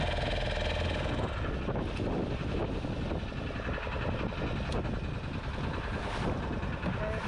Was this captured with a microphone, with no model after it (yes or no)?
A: yes